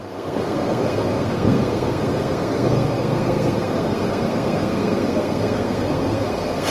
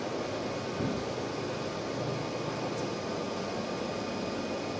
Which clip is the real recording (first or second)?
second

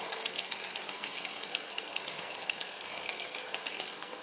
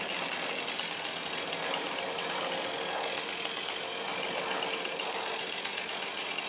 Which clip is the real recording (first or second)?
second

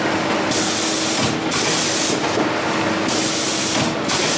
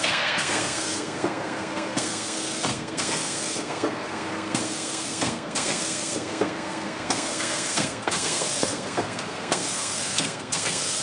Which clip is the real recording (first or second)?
first